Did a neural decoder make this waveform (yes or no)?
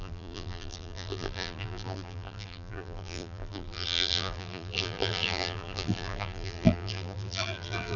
yes